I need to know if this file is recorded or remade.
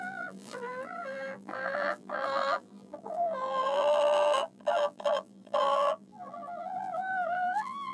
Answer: remade